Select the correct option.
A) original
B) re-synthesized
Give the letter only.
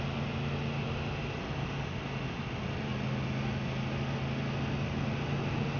A